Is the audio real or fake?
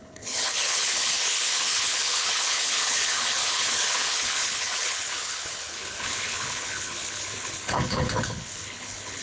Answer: fake